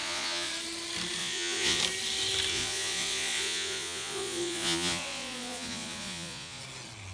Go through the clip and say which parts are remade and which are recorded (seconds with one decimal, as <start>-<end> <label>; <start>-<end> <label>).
0.0-0.5 remade; 0.5-1.2 recorded; 1.2-1.8 remade; 1.8-2.5 recorded; 2.5-6.6 remade; 6.6-7.1 recorded